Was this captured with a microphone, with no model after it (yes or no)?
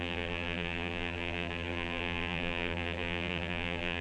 no